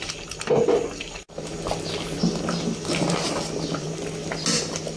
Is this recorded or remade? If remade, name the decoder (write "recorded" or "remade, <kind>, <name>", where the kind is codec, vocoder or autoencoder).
recorded